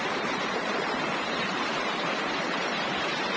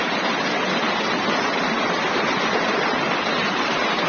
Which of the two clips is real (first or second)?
second